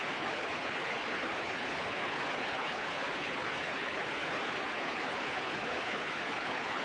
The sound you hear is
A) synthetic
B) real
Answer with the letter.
A